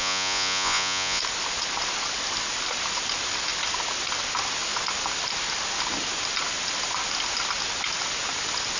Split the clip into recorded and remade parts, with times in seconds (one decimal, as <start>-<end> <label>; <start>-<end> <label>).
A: 0.0-1.2 remade; 1.2-8.8 recorded